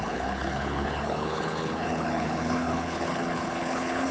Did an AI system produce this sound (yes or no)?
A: yes